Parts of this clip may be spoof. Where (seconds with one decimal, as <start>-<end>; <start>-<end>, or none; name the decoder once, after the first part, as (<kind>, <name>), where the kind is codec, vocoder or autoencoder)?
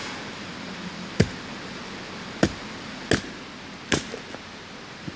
0.0-3.1 (vocoder, BigVGAN v2)